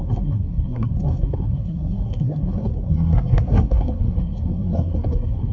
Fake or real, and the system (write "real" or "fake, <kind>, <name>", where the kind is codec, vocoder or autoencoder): fake, codec, SNAC